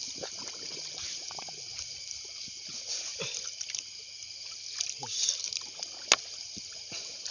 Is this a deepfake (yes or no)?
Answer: no